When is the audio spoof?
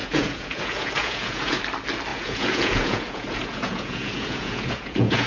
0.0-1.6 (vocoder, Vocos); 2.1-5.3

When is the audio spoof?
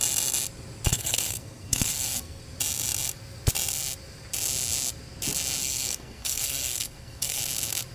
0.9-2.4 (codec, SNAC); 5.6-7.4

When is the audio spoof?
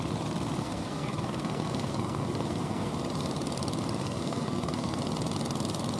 0.6-2.9 (codec, SNAC); 4.0-5.0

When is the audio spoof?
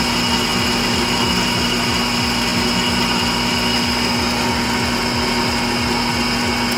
none